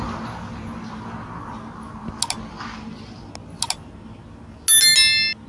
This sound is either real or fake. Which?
real